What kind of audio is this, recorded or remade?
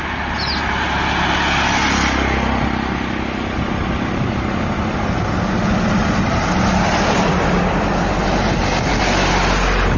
recorded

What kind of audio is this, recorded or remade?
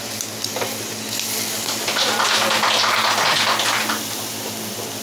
recorded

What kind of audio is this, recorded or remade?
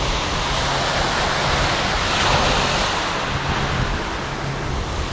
recorded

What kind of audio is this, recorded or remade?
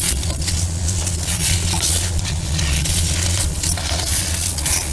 remade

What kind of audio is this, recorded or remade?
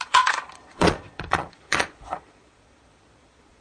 remade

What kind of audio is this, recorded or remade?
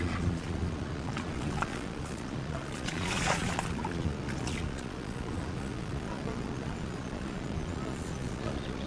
remade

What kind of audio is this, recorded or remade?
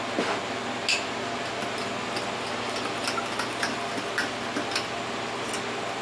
recorded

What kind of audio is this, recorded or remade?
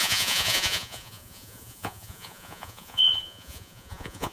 remade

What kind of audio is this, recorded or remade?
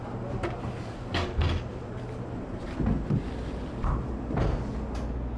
recorded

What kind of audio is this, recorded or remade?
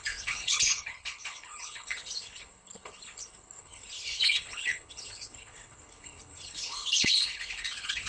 remade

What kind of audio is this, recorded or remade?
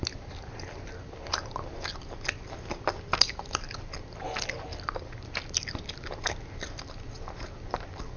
recorded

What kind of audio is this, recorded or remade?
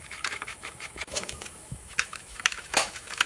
remade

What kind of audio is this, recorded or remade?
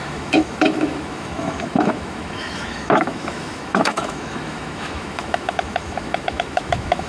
remade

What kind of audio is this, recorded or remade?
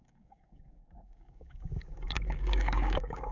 remade